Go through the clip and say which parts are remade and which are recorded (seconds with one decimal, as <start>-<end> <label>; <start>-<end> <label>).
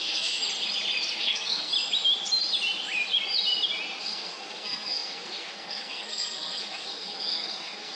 0.0-0.4 remade; 0.4-1.2 recorded; 1.2-1.7 remade; 1.7-4.0 recorded; 4.0-8.0 remade